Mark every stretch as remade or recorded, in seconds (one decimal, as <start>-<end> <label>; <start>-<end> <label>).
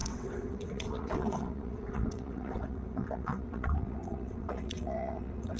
0.0-5.6 remade